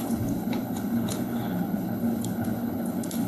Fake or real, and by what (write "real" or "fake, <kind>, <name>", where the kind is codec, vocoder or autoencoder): fake, codec, HILCodec